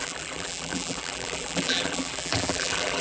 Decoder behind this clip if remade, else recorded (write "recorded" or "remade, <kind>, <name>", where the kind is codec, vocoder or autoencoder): remade, vocoder, BigVGAN v2